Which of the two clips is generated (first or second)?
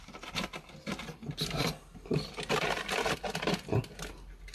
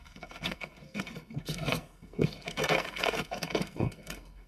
second